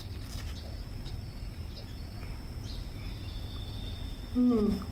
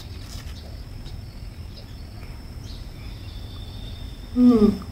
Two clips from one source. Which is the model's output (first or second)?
second